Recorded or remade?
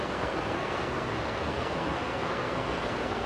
remade